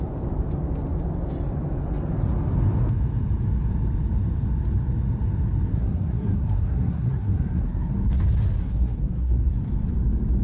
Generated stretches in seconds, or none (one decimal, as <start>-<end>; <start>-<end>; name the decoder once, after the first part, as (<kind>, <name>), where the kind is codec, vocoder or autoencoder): 5.7-7.9 (codec, SNAC); 8.6-9.5